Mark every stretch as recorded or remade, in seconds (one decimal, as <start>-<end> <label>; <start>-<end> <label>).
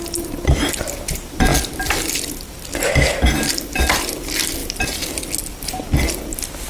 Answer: 0.0-6.7 recorded